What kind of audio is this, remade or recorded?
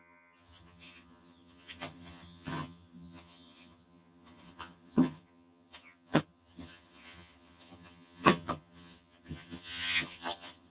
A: remade